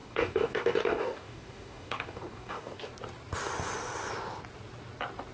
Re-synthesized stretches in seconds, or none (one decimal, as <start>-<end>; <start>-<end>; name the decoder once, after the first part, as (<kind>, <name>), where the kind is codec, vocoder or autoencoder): 0.0-2.9 (codec, DAC)